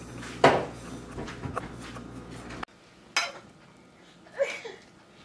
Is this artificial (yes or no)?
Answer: no